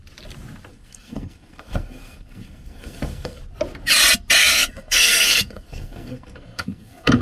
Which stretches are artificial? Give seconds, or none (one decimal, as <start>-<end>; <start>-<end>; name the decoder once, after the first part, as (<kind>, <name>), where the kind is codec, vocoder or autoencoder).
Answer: 0.7-3.4 (codec, SNAC); 4.4-7.2

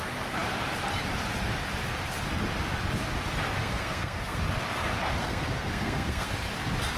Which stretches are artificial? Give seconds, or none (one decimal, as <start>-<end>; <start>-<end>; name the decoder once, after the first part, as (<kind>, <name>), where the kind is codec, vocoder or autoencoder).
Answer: 3.6-4.4 (codec, SNAC); 5.2-6.3

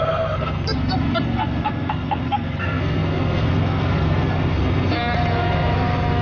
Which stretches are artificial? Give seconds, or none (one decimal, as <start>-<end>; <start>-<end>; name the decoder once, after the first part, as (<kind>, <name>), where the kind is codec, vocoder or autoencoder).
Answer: 0.0-6.2 (codec, SNAC)